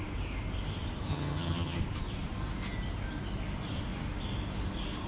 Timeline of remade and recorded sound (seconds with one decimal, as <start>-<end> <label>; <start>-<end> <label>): 0.0-1.1 recorded; 1.1-1.8 remade; 1.8-5.1 recorded